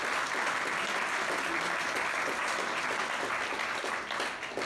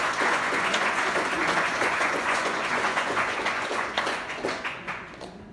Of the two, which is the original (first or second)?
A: first